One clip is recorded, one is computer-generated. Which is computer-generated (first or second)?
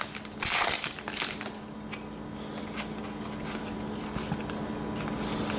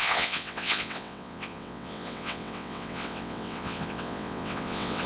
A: second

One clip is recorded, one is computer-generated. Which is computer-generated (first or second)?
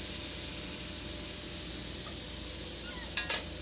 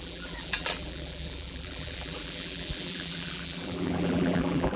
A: second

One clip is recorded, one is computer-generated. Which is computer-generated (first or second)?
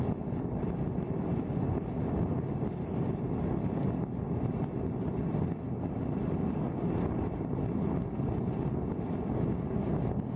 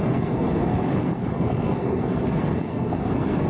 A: second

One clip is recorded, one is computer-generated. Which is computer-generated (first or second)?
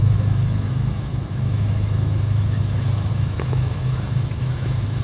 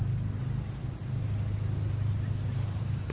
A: first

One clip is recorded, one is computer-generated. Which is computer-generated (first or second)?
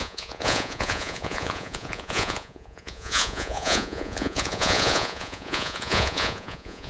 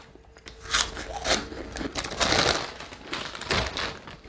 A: first